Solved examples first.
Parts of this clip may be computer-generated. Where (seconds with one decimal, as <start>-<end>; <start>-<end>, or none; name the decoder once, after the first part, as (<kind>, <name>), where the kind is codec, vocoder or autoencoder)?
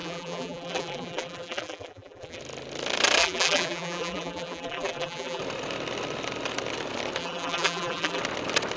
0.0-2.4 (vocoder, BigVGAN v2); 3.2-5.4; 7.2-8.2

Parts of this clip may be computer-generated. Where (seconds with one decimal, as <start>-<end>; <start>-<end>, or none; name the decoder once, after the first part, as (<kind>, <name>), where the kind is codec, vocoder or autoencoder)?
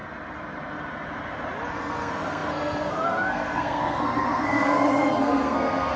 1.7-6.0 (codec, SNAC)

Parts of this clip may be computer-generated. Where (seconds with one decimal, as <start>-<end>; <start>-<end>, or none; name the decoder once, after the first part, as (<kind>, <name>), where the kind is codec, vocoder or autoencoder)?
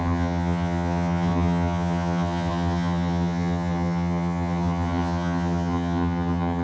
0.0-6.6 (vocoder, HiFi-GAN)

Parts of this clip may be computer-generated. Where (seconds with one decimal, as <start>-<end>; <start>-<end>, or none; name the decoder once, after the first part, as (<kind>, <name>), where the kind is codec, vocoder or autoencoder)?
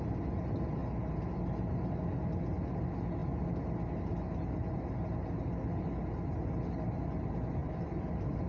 7.6-8.5 (vocoder, BigVGAN v2)